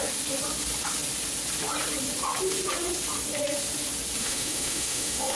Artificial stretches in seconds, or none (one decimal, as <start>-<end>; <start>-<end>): 4.2-5.4